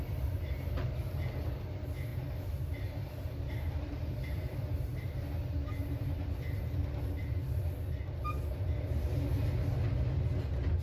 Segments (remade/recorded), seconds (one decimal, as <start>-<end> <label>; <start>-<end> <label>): 0.0-2.1 recorded; 2.1-5.3 remade; 5.3-10.8 recorded